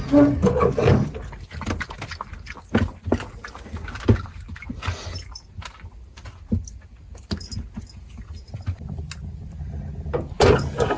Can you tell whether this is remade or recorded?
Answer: recorded